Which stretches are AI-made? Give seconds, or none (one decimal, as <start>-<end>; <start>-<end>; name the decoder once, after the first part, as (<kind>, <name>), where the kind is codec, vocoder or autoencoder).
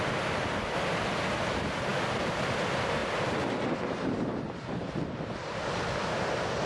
0.0-3.0 (vocoder, BigVGAN v2)